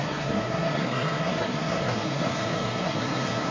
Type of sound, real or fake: fake